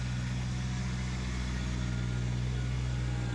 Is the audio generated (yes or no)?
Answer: no